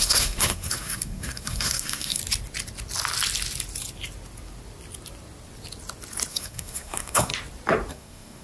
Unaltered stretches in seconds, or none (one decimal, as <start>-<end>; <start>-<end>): 2.2-6.3; 7.3-7.9